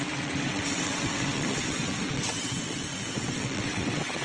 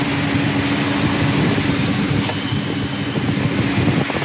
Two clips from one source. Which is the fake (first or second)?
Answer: first